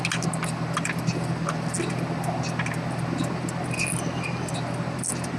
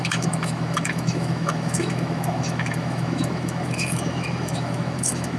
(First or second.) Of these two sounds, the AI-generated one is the second